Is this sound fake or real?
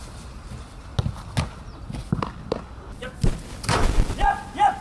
real